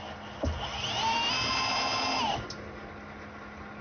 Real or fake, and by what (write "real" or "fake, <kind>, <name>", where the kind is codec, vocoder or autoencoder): real